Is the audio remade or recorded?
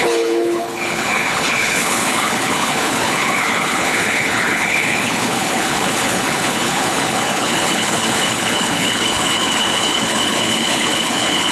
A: remade